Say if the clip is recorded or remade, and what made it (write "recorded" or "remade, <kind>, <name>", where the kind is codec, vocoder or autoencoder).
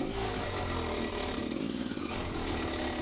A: recorded